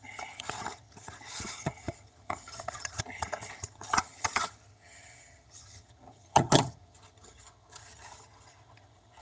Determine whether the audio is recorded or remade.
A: remade